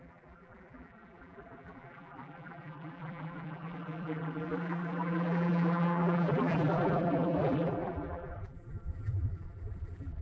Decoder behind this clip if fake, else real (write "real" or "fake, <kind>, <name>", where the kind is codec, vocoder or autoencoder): fake, vocoder, BigVGAN v2